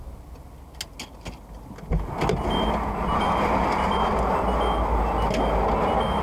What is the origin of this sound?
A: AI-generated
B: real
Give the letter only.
B